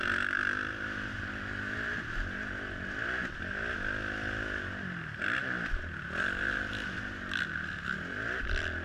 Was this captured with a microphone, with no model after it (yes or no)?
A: yes